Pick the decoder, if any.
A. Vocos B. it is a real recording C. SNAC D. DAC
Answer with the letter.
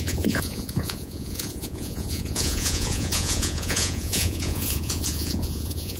A